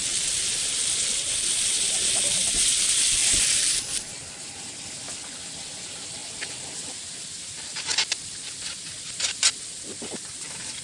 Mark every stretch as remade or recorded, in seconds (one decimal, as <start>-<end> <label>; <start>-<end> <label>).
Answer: 0.0-1.1 remade; 1.1-3.2 recorded; 3.2-4.3 remade; 4.3-10.8 recorded